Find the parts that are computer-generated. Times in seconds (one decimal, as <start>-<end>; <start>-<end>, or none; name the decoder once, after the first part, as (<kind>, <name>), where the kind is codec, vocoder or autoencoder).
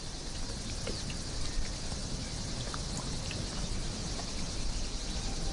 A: none